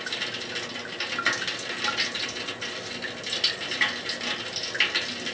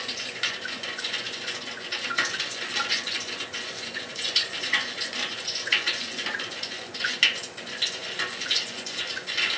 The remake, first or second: second